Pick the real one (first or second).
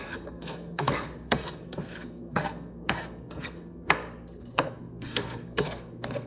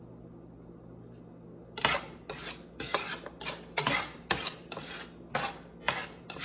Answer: second